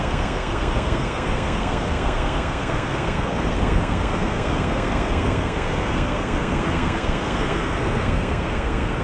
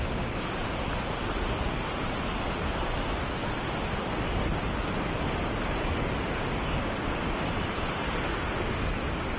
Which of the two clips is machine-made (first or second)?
first